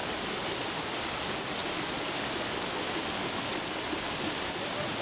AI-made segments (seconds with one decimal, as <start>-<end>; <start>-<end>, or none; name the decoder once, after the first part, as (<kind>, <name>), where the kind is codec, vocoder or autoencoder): none

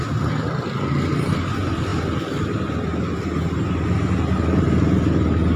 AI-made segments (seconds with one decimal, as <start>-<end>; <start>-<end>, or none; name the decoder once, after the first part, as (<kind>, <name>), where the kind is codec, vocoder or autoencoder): none